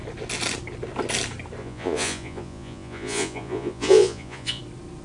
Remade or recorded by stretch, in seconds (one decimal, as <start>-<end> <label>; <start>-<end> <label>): 0.0-1.6 recorded; 1.6-4.6 remade; 4.6-5.0 recorded